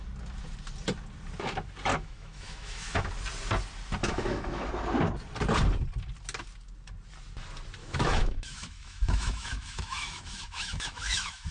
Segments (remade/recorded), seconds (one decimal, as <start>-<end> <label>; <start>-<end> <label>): 0.0-1.9 recorded; 1.9-3.1 remade; 3.1-4.0 recorded; 4.0-4.7 remade; 4.7-7.8 recorded; 7.8-11.5 remade